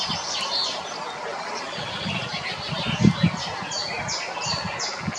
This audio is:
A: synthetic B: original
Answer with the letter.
B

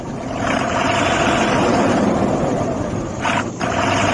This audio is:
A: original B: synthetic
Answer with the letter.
B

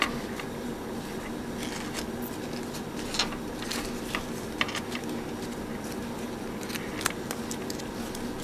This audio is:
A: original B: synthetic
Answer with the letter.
A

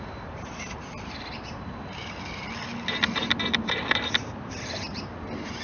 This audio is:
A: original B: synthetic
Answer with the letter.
B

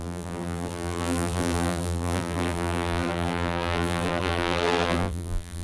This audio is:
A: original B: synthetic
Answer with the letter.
B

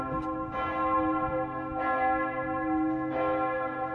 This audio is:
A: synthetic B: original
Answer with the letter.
B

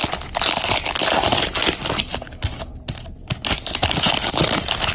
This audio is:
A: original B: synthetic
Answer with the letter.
A